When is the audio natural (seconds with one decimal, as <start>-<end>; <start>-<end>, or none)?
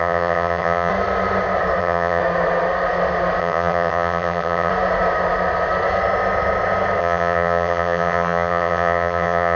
0.9-1.8; 2.2-3.4; 4.7-7.0